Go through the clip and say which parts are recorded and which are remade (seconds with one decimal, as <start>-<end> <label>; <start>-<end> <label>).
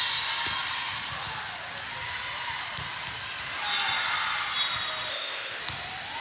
0.0-5.1 recorded; 5.1-5.6 remade; 5.6-6.2 recorded